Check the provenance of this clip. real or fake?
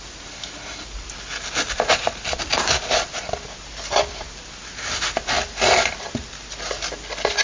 real